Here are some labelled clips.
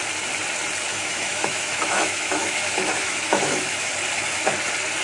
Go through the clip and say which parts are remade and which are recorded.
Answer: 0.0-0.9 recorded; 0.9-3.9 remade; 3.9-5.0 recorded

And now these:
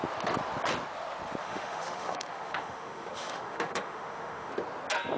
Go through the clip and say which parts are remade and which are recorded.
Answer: 0.0-1.4 recorded; 1.4-4.5 remade; 4.5-5.2 recorded

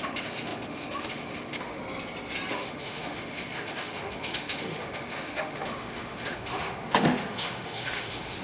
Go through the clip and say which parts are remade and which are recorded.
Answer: 0.0-1.8 remade; 1.8-2.5 recorded; 2.5-8.4 remade

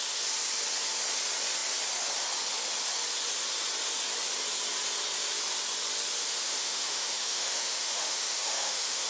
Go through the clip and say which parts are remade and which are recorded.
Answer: 0.0-6.2 recorded; 6.2-9.1 remade

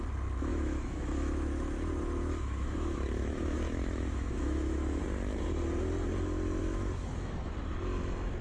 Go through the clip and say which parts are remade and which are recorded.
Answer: 0.0-0.5 recorded; 0.5-5.0 remade; 5.0-6.6 recorded; 6.6-7.5 remade; 7.5-8.4 recorded

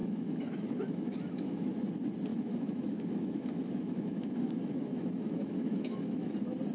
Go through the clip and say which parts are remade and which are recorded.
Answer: 0.0-1.7 remade; 1.7-2.3 recorded; 2.3-6.3 remade; 6.3-6.7 recorded

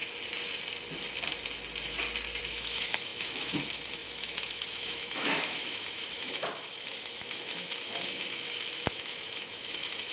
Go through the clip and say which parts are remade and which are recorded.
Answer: 0.0-2.4 recorded; 2.4-10.1 remade